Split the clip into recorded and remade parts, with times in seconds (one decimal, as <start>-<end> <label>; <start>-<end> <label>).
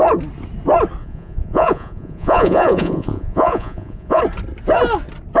0.0-1.0 recorded; 1.0-4.2 remade; 4.2-5.4 recorded